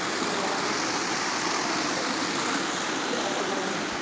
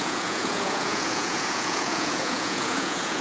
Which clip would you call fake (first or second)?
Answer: second